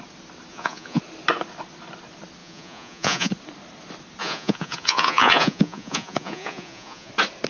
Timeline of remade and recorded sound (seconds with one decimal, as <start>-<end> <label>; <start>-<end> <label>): 0.0-0.5 recorded; 0.5-1.0 remade; 1.0-2.4 recorded; 2.4-3.3 remade; 3.3-4.2 recorded; 4.2-7.1 remade; 7.1-7.5 recorded